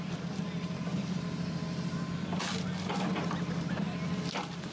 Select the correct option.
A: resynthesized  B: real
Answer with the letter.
B